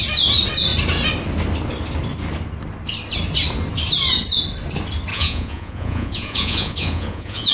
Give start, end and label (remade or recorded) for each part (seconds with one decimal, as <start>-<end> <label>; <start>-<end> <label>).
0.0-5.1 recorded; 5.1-7.5 remade